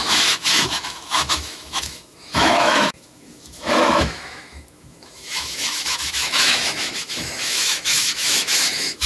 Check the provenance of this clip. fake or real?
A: fake